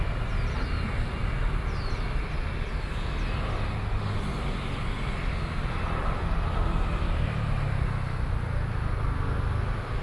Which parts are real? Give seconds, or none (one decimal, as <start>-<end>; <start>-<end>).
0.0-10.0